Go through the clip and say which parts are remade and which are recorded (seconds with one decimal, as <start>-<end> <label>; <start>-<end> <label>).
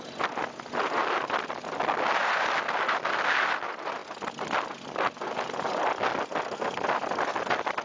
0.0-7.8 recorded